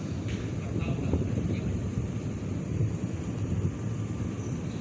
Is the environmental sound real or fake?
fake